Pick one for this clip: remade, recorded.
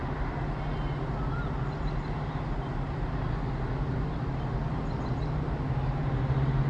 recorded